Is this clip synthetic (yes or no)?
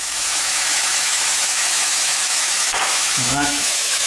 yes